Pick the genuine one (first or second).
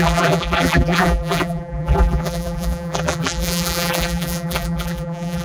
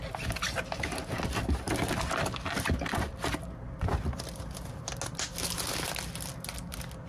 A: second